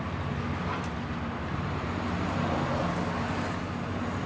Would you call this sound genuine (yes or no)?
yes